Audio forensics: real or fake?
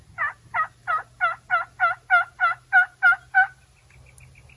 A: real